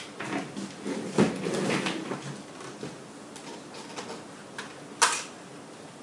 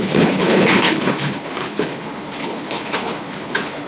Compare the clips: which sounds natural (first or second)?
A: first